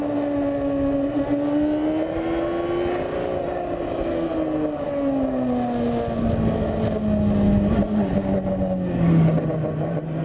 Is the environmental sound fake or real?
real